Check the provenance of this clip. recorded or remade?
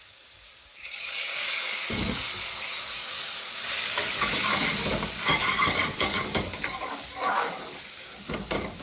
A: remade